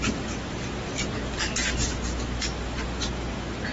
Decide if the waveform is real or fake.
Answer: real